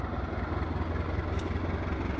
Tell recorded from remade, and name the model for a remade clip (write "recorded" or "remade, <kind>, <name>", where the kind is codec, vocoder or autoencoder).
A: recorded